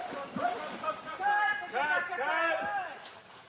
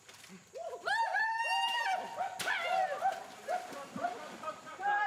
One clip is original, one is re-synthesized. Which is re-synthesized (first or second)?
second